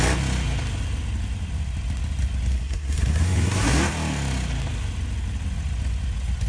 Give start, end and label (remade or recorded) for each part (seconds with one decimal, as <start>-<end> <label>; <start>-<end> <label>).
0.0-2.5 recorded; 2.5-3.8 remade; 3.8-6.5 recorded